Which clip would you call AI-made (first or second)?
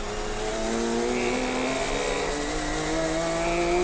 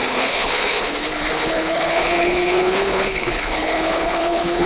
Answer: second